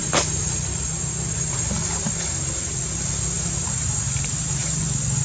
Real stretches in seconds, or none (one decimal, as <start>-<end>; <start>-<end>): 0.0-5.2